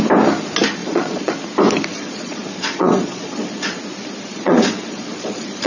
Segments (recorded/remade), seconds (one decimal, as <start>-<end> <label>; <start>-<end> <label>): 0.0-0.8 recorded; 0.8-1.3 remade; 1.3-1.9 recorded; 1.9-3.8 remade; 3.8-4.3 recorded; 4.3-5.7 remade